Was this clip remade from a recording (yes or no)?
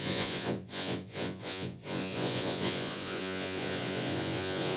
yes